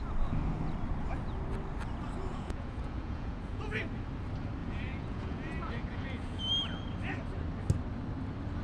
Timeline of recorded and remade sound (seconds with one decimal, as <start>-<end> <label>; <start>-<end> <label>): 0.0-2.3 recorded; 2.3-3.8 remade; 3.8-4.6 recorded; 4.6-6.4 remade; 6.4-8.6 recorded